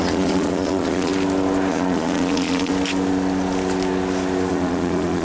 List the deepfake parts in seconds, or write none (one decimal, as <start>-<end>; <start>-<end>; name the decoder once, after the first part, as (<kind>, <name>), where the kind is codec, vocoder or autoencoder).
0.0-1.1 (vocoder, Vocos); 1.7-2.7; 4.5-5.2